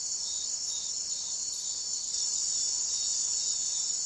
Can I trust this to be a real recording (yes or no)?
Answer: yes